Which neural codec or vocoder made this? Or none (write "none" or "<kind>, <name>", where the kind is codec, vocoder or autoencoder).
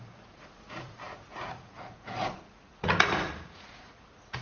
vocoder, Vocos